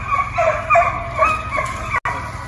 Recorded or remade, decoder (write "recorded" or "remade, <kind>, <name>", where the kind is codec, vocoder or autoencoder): recorded